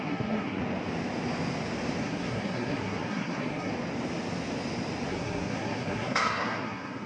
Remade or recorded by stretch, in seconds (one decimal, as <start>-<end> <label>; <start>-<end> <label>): 0.0-0.6 remade; 0.6-2.0 recorded; 2.0-3.7 remade; 3.7-5.1 recorded; 5.1-7.1 remade